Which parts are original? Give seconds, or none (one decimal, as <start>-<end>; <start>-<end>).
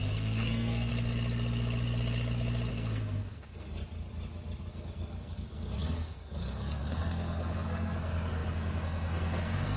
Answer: 0.9-2.7; 3.8-4.7